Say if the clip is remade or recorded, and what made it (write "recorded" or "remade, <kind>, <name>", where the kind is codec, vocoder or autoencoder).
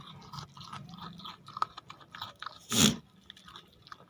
recorded